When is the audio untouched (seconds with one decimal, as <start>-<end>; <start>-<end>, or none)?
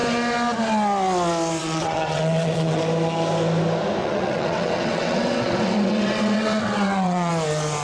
0.0-1.6; 2.8-4.0; 7.3-7.8